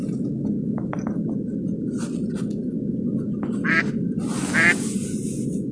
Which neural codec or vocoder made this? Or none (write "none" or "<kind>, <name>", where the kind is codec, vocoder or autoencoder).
none